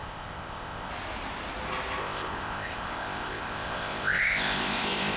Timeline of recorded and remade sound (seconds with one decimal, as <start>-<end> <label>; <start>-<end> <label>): 0.0-0.9 remade; 0.9-2.0 recorded; 2.0-5.2 remade